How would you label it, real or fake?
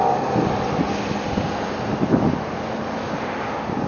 real